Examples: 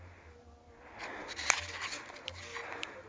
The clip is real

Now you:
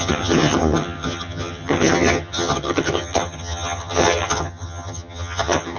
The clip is fake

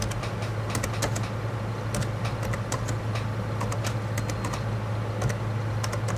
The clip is real